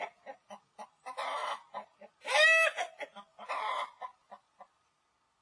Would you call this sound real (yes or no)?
yes